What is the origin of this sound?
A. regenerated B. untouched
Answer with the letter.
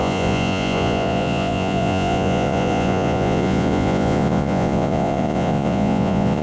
A